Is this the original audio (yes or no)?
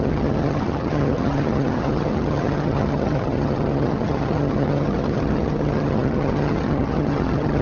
no